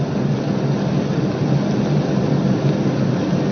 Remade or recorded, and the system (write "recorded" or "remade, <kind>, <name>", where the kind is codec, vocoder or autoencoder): recorded